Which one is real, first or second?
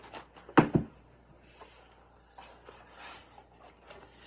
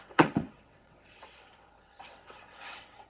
first